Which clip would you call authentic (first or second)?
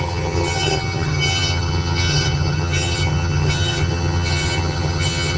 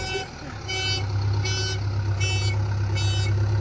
second